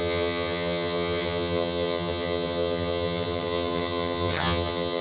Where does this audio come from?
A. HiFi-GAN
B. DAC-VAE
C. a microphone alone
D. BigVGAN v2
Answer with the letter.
A